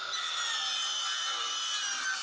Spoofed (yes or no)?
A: no